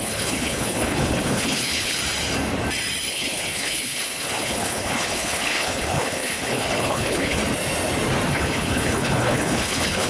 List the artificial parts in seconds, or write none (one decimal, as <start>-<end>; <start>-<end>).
0.0-2.0; 3.1-7.4; 8.3-10.1